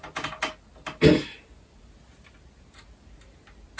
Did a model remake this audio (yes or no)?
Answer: no